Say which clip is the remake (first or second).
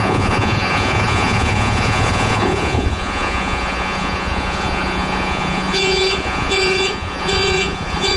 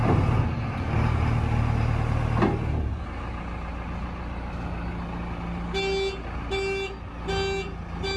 first